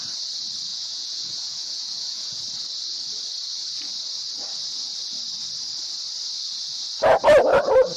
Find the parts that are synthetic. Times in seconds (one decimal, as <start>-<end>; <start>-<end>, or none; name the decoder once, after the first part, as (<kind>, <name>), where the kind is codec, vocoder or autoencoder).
0.7-2.4 (vocoder, Vocos)